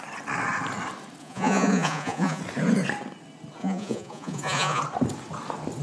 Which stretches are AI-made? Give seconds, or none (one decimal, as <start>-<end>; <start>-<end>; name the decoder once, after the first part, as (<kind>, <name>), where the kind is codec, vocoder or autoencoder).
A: 1.2-2.4 (vocoder, Vocos); 3.6-4.8